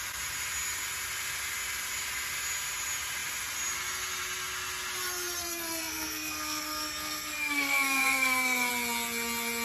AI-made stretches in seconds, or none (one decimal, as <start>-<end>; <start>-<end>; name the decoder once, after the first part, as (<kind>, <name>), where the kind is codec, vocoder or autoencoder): 5.4-8.7 (codec, SNAC)